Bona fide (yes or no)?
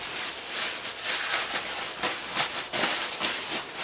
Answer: yes